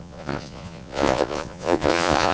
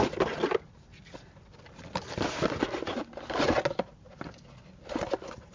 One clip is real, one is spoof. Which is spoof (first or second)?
first